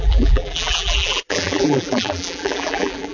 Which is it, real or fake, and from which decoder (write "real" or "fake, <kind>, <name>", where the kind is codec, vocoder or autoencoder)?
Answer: fake, vocoder, BigVGAN v2